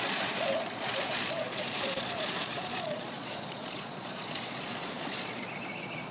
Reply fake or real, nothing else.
fake